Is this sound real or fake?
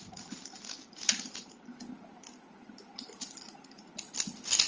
real